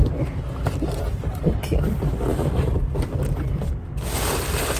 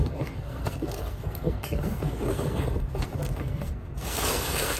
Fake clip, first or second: second